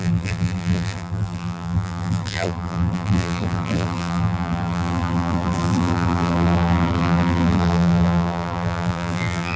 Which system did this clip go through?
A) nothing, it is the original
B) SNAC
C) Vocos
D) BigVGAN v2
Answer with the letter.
D